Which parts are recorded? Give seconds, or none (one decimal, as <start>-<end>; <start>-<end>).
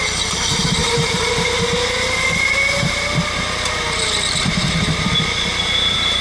0.0-6.2